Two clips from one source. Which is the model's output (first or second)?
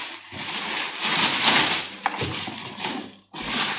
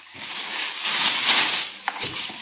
second